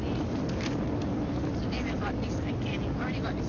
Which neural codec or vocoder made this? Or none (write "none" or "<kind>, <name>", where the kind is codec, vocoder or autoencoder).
none